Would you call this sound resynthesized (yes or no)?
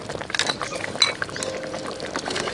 no